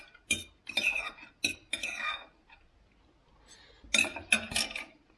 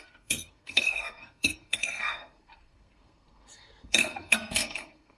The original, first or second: first